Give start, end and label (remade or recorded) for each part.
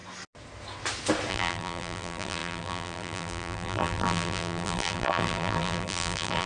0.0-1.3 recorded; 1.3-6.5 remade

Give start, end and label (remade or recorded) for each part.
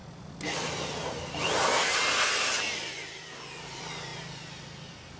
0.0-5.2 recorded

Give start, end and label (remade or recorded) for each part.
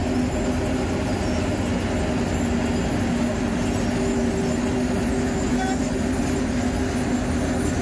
0.0-5.5 recorded; 5.5-6.2 remade; 6.2-7.8 recorded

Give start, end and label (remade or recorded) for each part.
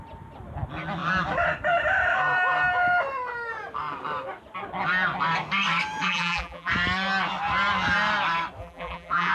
0.0-6.0 recorded; 6.0-6.7 remade; 6.7-8.6 recorded; 8.6-9.3 remade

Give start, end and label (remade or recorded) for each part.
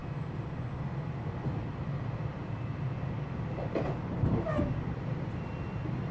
0.0-6.1 recorded